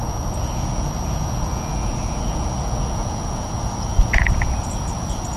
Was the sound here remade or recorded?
remade